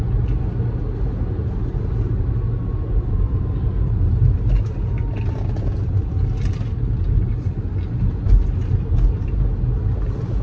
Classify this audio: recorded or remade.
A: recorded